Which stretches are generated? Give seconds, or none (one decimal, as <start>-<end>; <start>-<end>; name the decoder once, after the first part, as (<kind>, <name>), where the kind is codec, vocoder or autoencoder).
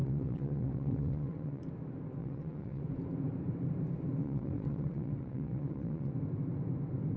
0.0-1.6 (vocoder, WaveNeXt); 2.2-2.8; 4.2-6.1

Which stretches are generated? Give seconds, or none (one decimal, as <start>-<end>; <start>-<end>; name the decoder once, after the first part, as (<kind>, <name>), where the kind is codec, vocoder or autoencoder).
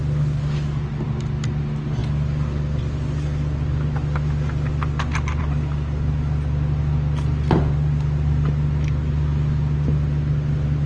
none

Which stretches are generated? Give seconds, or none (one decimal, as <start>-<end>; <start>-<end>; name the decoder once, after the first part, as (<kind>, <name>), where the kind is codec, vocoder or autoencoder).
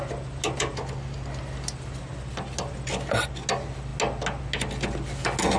none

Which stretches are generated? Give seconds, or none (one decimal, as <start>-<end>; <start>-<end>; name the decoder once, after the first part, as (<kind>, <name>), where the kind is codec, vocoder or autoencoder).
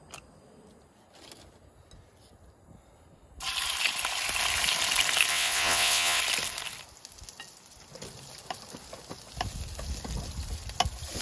5.3-6.2 (vocoder, WaveNeXt)